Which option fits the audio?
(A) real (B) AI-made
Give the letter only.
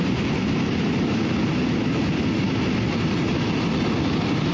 A